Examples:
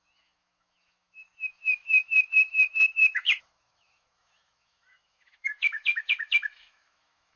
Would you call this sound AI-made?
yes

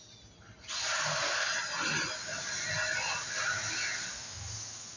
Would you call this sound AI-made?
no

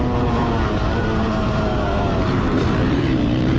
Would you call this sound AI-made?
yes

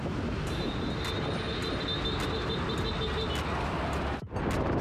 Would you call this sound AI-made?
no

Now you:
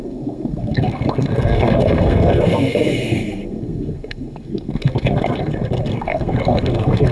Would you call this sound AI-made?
yes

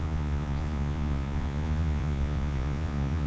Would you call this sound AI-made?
yes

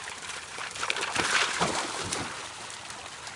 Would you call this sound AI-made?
no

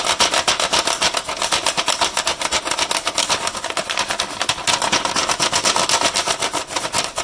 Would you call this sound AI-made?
no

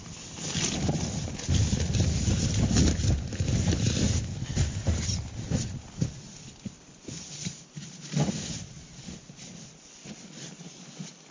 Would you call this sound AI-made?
no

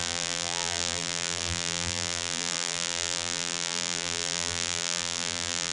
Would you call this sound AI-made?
yes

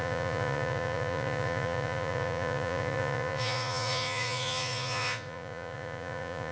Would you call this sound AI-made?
yes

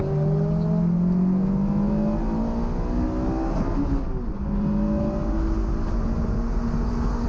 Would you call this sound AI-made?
no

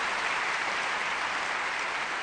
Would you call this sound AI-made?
no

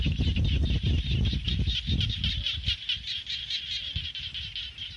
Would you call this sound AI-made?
no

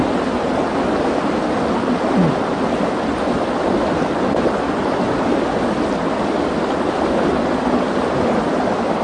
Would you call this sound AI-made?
no